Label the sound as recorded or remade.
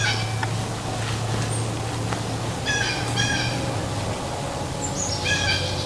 recorded